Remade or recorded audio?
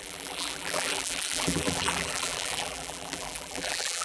remade